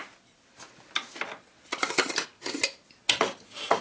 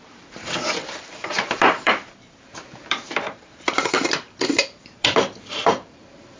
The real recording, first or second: first